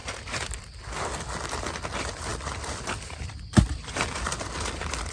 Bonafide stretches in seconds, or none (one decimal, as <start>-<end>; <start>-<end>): 0.8-2.3; 4.3-5.1